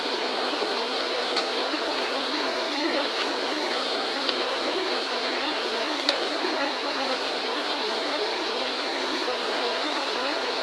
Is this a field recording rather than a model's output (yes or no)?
no